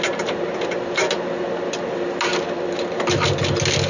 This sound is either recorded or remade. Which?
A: recorded